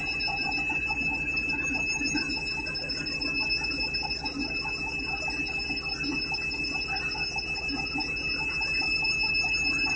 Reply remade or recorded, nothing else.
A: recorded